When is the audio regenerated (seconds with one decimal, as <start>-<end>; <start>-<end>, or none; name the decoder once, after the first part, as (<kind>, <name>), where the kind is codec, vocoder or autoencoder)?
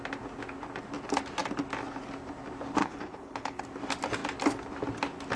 2.8-3.6 (codec, HILCodec)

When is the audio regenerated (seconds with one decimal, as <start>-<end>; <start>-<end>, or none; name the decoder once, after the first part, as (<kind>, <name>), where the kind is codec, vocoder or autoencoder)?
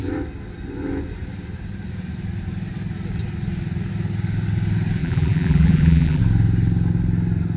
5.0-6.2 (vocoder, BigVGAN v2)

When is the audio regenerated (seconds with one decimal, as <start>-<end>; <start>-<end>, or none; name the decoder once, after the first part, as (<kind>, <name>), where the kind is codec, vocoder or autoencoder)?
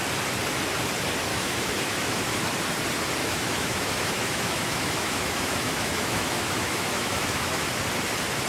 1.3-2.4 (autoencoder, DAC-VAE); 3.2-7.7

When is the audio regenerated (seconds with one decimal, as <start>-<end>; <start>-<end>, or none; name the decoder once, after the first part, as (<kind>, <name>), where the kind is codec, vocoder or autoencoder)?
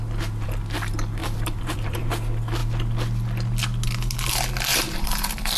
1.2-2.1 (vocoder, BigVGAN v2); 4.7-5.6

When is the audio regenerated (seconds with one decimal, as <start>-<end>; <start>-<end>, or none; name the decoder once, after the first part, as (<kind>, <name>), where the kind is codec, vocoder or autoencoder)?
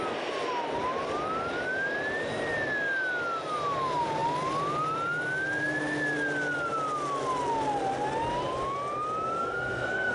9.4-10.1 (codec, SNAC)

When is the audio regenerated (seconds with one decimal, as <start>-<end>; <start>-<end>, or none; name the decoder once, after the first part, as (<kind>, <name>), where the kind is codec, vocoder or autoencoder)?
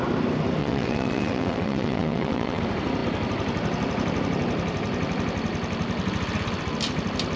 0.6-2.6 (vocoder, WaveNeXt)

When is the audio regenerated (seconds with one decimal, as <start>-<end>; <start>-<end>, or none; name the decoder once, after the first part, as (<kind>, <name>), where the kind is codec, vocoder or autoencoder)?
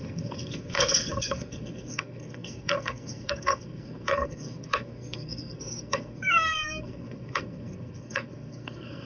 0.0-9.1 (codec, SNAC)